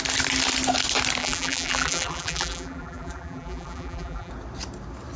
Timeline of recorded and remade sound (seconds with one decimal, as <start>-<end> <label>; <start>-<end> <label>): 0.0-1.2 recorded; 1.2-4.3 remade; 4.3-5.2 recorded